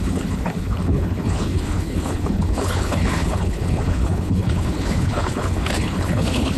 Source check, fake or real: fake